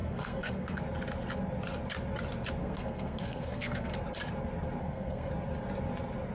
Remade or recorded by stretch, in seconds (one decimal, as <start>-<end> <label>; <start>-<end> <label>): 0.0-0.8 remade; 0.8-2.6 recorded; 2.6-4.0 remade; 4.0-4.8 recorded; 4.8-5.3 remade; 5.3-6.3 recorded